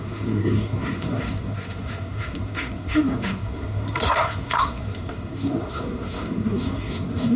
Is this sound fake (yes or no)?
yes